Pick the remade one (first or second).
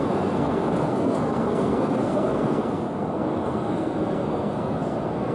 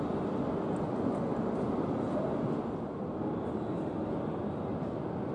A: first